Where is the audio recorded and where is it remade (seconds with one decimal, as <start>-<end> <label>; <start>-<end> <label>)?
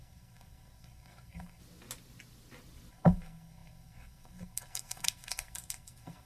0.0-1.6 remade; 1.6-2.9 recorded; 2.9-6.3 remade